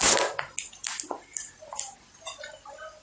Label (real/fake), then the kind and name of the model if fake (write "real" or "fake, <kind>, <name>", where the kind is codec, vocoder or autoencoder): real